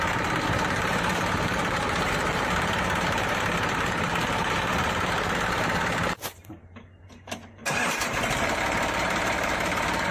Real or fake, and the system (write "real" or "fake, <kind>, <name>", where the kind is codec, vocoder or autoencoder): fake, vocoder, BigVGAN v2